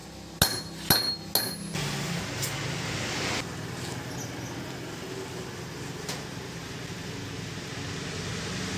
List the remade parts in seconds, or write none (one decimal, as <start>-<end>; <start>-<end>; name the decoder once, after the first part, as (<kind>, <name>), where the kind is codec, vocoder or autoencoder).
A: 6.6-7.7 (vocoder, BigVGAN v2)